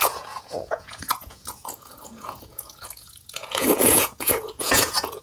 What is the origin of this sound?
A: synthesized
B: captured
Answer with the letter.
A